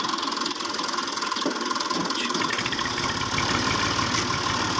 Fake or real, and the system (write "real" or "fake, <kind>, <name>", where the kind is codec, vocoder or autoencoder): real